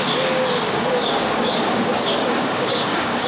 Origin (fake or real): fake